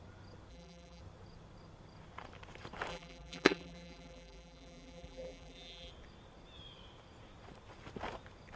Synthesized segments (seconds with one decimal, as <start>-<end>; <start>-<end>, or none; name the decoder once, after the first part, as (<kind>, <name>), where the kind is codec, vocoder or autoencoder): 0.5-1.0 (vocoder, BigVGAN v2); 2.9-5.9